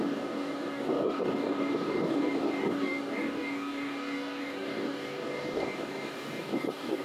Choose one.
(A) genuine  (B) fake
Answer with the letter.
B